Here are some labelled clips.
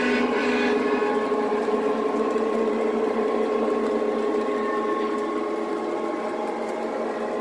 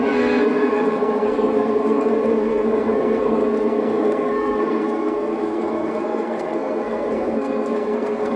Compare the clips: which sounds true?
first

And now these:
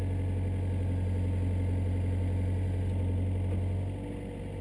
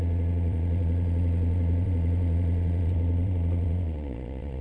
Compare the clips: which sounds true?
first